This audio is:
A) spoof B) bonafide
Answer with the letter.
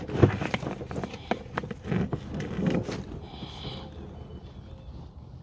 B